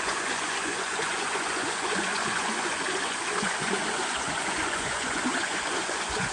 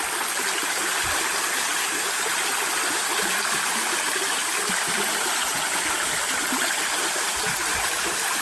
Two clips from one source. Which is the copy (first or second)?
first